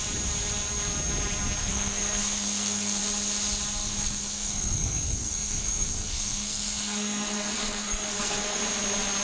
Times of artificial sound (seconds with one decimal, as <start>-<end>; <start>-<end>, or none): 1.6-3.0; 3.8-8.6